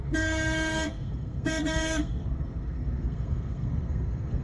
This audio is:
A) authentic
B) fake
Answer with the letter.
B